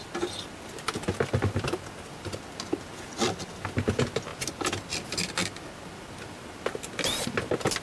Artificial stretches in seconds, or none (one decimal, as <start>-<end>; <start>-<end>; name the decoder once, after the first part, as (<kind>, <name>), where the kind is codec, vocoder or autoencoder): none